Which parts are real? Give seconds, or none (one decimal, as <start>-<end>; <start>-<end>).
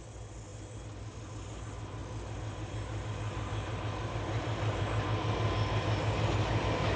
0.0-7.0